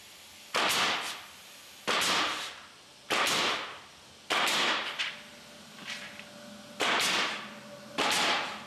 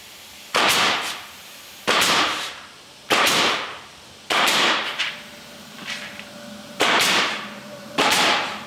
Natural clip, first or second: first